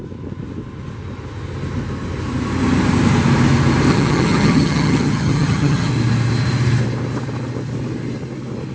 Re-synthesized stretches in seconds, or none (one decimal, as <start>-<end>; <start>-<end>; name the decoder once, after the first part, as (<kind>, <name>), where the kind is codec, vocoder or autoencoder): 3.9-5.9 (vocoder, HiFi-GAN)